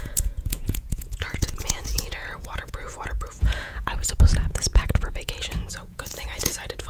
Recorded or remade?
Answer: remade